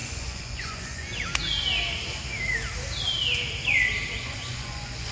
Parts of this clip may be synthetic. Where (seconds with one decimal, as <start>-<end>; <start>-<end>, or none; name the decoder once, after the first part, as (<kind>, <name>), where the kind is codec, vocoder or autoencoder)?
0.0-1.1 (vocoder, Vocos); 4.2-5.1